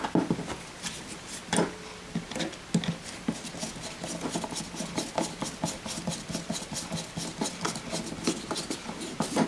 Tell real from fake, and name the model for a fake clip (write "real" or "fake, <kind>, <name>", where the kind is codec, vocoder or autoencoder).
real